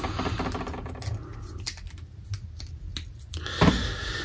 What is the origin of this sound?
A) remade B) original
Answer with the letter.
B